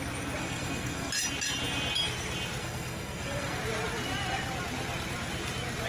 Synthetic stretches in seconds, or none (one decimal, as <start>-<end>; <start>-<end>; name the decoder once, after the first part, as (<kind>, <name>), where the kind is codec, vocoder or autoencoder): 0.4-1.1 (codec, SNAC); 2.6-3.6